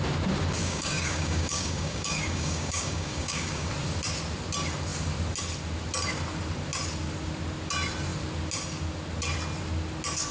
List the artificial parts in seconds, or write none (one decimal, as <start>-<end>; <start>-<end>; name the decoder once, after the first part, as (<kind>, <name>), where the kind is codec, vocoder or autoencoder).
0.6-3.7 (codec, DAC)